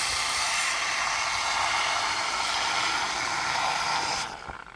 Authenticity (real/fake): real